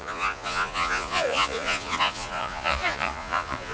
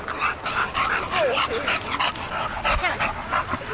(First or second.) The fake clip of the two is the first